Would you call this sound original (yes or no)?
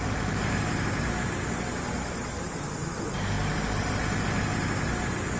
yes